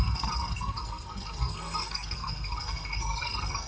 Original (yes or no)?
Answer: no